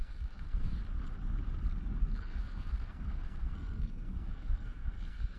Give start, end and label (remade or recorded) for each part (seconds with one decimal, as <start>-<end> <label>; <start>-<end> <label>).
0.0-0.8 remade; 0.8-2.0 recorded; 2.0-5.4 remade